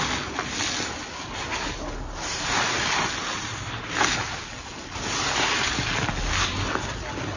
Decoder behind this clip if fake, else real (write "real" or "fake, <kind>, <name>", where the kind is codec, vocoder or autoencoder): real